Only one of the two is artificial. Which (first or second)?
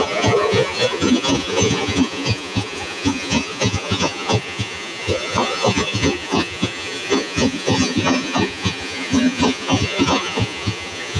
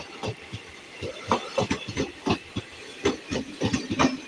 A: first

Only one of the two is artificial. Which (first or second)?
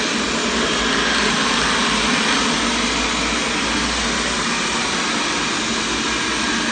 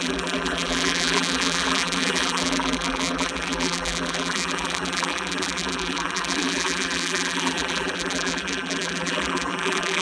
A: second